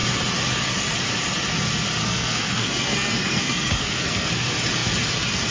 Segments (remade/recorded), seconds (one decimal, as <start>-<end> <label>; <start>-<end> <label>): 0.0-2.0 recorded; 2.0-4.3 remade; 4.3-5.5 recorded